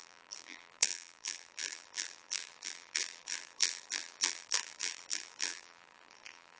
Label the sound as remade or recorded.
remade